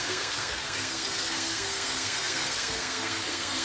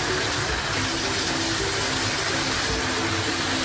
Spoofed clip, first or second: first